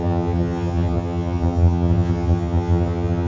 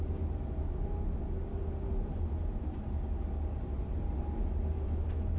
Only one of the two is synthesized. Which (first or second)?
first